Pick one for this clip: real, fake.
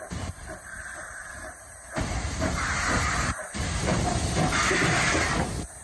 fake